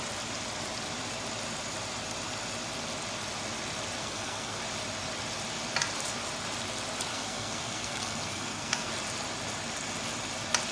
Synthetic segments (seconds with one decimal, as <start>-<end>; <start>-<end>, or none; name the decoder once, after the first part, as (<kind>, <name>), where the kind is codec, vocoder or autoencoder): 4.0-4.6 (codec, SNAC); 7.1-8.9